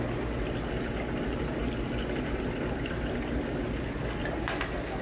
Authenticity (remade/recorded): recorded